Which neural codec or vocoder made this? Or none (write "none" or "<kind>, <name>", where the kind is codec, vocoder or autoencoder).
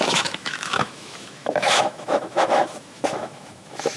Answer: autoencoder, DAC-VAE